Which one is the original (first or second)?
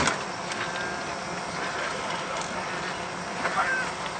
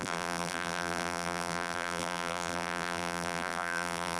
first